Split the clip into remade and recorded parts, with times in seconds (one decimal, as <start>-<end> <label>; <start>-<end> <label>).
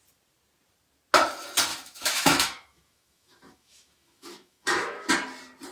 0.0-1.7 recorded; 1.7-5.1 remade; 5.1-5.7 recorded